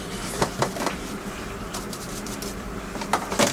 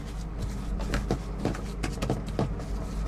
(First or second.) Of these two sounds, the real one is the second